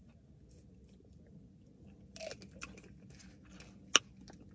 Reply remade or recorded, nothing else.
recorded